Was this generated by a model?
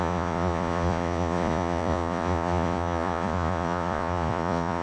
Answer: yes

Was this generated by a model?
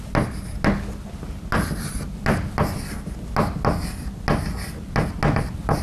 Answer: no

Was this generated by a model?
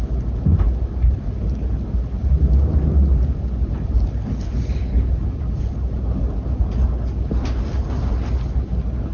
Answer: no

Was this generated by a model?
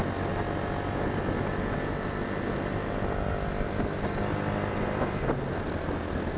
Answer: no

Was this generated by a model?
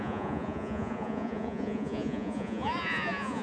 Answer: yes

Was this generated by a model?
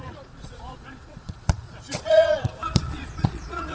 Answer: yes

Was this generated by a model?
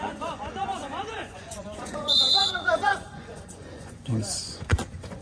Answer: yes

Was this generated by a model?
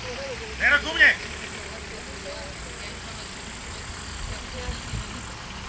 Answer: no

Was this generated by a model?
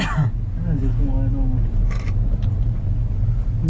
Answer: no